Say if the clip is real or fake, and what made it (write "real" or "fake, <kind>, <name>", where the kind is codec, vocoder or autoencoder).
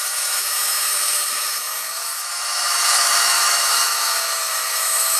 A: fake, autoencoder, DAC-VAE